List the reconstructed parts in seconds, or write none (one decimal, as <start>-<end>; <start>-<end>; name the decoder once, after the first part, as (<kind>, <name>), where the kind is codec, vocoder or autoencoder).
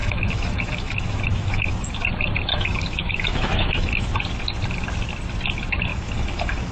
0.0-1.7 (autoencoder, DAC-VAE); 2.5-4.1; 5.9-6.7